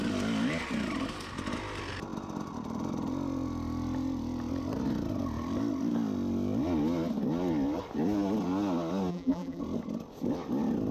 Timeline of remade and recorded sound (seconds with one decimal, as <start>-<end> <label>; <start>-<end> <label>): 0.0-9.1 recorded; 9.1-9.6 remade; 9.6-10.9 recorded